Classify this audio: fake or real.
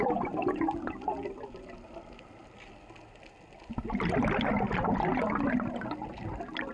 real